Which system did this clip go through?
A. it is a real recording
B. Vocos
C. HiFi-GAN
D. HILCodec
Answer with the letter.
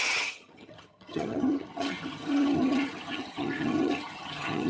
C